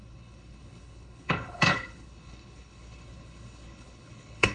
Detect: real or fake fake